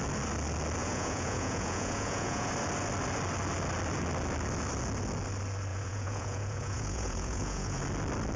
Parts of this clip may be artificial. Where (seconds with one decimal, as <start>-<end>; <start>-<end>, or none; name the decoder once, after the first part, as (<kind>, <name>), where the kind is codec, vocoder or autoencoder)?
0.8-2.5 (vocoder, Vocos); 5.7-7.8